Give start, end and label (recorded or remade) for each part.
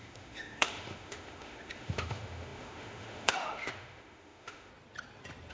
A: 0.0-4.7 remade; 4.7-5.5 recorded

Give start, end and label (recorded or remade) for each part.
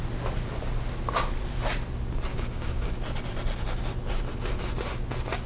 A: 0.0-2.3 recorded; 2.3-2.9 remade; 2.9-5.5 recorded